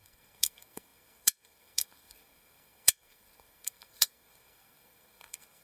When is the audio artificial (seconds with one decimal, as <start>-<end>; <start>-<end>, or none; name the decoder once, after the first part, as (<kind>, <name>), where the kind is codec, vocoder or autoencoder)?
0.0-5.6 (codec, SNAC)